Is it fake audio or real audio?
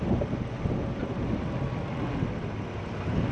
real